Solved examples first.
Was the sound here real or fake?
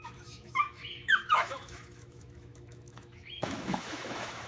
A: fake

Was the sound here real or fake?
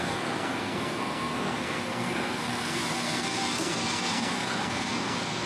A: fake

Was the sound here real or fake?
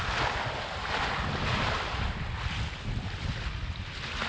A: real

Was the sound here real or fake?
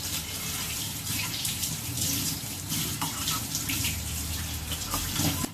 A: fake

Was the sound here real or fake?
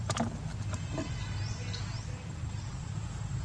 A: real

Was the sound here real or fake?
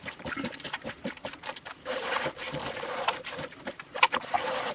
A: fake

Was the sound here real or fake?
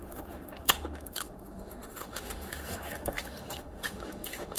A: fake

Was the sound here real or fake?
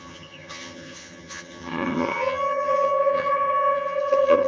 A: fake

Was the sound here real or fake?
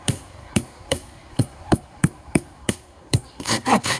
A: fake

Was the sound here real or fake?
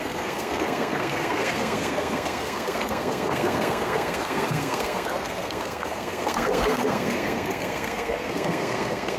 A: fake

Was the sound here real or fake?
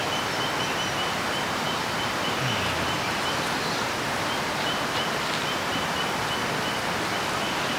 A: fake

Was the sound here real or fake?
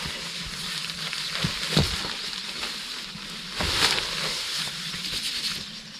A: real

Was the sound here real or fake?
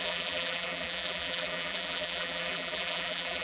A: fake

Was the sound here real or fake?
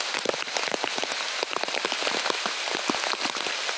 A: real